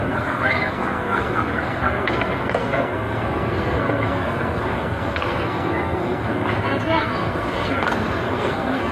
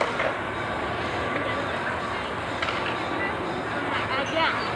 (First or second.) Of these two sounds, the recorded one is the second